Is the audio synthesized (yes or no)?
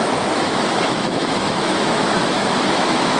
yes